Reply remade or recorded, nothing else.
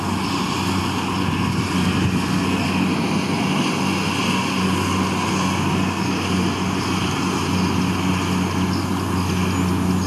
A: recorded